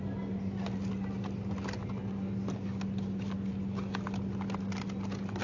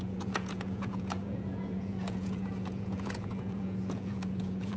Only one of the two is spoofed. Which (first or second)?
second